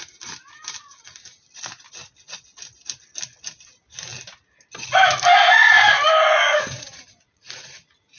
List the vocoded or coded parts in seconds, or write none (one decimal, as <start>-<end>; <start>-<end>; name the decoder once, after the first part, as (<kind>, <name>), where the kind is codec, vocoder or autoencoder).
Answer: 6.5-8.2 (vocoder, Vocos)